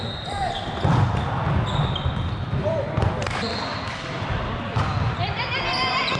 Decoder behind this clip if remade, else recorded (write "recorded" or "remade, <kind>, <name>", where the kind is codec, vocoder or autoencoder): recorded